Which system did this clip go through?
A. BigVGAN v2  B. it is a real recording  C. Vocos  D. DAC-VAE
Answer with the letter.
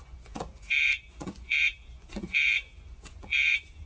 C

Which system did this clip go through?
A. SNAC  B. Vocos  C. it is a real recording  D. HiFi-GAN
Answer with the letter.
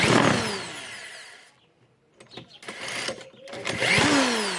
C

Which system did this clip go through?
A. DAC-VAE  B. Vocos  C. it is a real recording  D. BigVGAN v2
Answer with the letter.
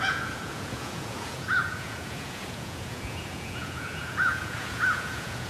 B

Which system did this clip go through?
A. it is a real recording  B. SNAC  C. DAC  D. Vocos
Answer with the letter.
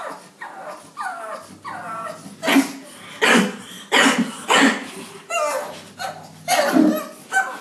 A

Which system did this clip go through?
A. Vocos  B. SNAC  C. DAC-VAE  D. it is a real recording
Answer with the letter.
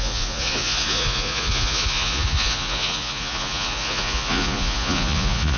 A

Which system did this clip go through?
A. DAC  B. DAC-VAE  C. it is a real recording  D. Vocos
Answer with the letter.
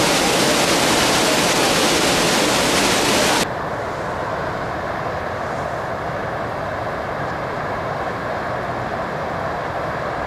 C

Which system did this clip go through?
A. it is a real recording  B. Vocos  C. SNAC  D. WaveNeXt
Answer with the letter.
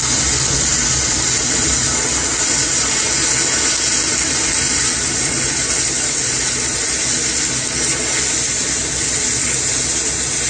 A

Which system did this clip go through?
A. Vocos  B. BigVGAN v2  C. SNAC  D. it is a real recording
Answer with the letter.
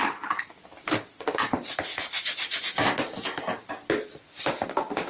D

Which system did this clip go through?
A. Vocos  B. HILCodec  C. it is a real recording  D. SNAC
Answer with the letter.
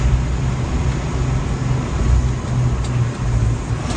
C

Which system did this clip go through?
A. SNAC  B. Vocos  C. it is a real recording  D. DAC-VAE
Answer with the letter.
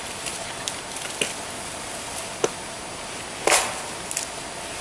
C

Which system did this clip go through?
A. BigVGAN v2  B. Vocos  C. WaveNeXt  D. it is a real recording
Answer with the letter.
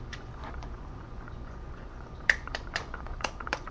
B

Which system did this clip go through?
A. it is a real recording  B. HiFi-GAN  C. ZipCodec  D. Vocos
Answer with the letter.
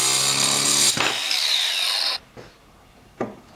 A